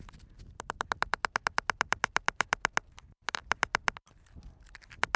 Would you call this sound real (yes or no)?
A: yes